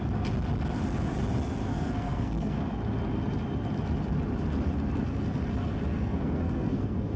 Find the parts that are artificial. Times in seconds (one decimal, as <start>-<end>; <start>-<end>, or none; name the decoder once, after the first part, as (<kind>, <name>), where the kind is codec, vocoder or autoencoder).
1.7-2.7 (codec, SNAC); 5.9-7.2